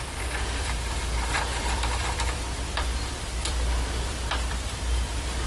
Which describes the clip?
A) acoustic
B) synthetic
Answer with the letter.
B